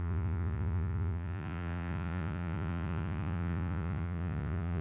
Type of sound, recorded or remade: remade